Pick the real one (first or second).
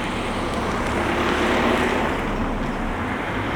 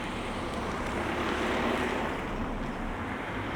first